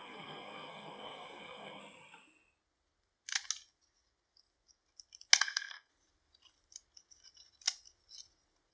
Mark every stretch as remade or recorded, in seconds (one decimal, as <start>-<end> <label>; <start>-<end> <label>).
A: 0.0-1.8 remade; 1.8-5.4 recorded; 5.4-5.9 remade; 5.9-8.7 recorded